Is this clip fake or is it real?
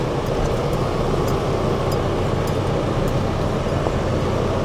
real